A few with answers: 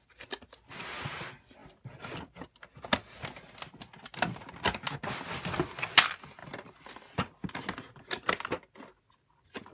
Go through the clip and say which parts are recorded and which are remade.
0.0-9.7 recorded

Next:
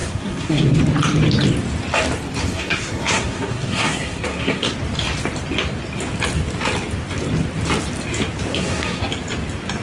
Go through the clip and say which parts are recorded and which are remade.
0.0-0.8 remade; 0.8-2.4 recorded; 2.4-4.7 remade; 4.7-8.5 recorded; 8.5-9.0 remade; 9.0-9.8 recorded

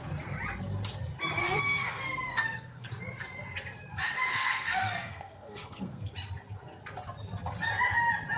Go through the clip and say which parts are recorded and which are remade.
0.0-1.4 recorded; 1.4-2.9 remade; 2.9-4.3 recorded; 4.3-6.1 remade; 6.1-8.4 recorded

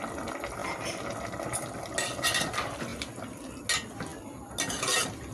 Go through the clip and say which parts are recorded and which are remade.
0.0-5.3 recorded

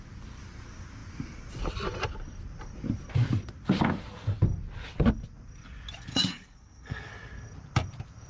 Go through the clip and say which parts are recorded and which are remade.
0.0-6.1 recorded; 6.1-7.1 remade; 7.1-8.3 recorded

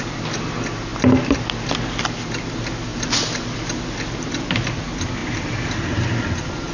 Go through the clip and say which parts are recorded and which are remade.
0.0-2.9 recorded; 2.9-3.9 remade; 3.9-5.2 recorded; 5.2-6.7 remade

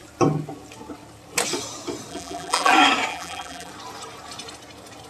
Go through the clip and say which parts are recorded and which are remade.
0.0-2.1 recorded; 2.1-2.7 remade; 2.7-3.1 recorded; 3.1-3.7 remade; 3.7-5.1 recorded